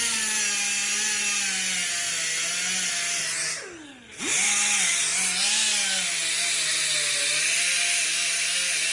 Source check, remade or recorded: recorded